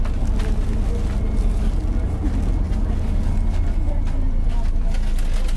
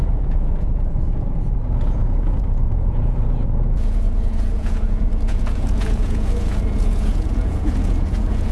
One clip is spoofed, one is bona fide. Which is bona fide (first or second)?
first